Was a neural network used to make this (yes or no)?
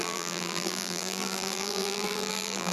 yes